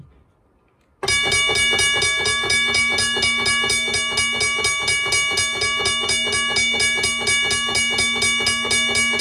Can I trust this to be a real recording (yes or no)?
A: yes